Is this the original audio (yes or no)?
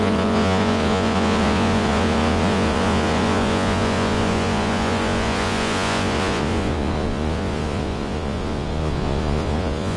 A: no